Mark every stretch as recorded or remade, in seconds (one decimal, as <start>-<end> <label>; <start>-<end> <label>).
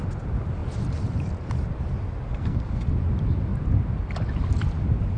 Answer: 0.0-2.3 recorded; 2.3-2.8 remade; 2.8-5.2 recorded